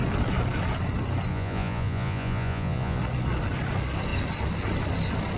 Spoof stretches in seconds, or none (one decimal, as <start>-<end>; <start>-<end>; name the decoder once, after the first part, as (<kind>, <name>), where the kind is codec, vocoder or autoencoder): 1.3-3.0 (vocoder, Vocos)